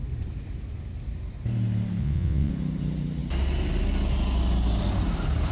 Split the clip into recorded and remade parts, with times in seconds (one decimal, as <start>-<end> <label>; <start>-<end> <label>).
0.0-2.0 recorded; 2.0-2.5 remade; 2.5-5.5 recorded